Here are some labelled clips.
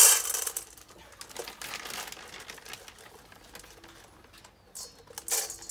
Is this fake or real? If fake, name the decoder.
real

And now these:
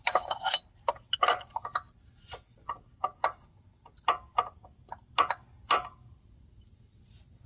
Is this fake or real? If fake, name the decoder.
real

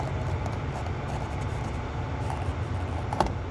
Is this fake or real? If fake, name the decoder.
real